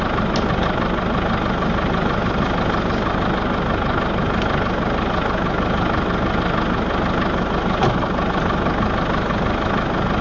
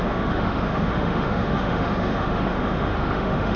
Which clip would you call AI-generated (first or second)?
second